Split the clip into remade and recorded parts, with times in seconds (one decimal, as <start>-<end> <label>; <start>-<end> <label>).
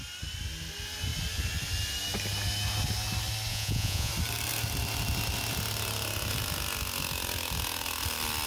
0.0-3.5 recorded; 3.5-4.1 remade; 4.1-8.5 recorded